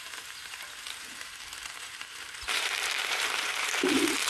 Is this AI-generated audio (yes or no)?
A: yes